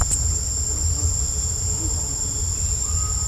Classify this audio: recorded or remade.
recorded